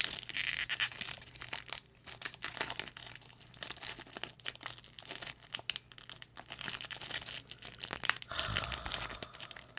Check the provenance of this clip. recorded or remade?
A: recorded